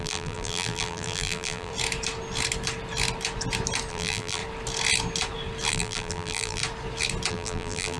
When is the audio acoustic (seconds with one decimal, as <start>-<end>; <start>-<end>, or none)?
1.7-3.9; 4.4-5.7; 6.6-7.3